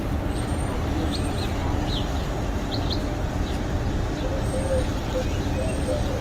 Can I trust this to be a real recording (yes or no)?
yes